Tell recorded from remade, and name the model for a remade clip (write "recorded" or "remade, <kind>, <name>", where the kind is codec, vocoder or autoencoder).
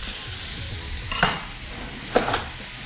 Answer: remade, vocoder, BigVGAN v2